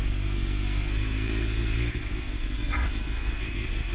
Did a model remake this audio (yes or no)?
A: yes